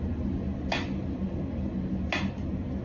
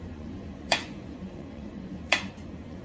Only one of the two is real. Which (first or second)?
first